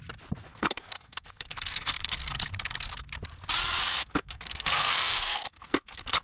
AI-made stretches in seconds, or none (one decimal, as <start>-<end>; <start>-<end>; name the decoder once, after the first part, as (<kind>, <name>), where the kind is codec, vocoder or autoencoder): 0.5-2.3 (codec, SNAC); 3.8-6.2